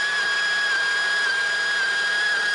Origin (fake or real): real